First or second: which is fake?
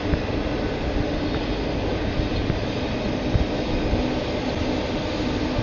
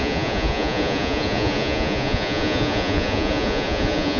second